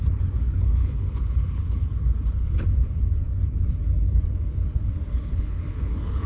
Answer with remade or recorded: remade